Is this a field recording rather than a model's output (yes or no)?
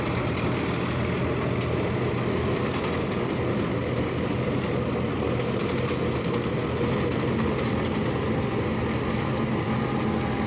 yes